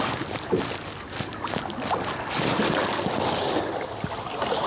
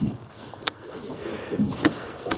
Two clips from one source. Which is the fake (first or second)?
second